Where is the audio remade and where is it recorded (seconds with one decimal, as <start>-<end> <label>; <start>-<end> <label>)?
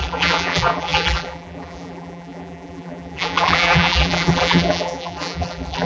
0.0-5.9 remade